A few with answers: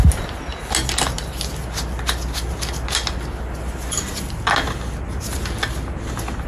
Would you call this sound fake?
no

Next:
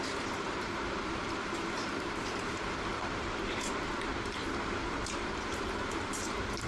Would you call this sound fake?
yes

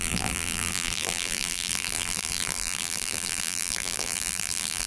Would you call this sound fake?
yes